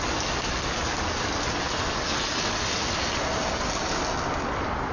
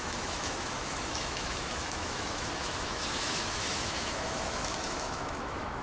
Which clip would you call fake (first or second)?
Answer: second